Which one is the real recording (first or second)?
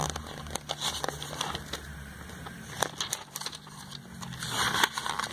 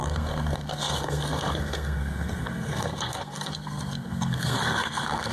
first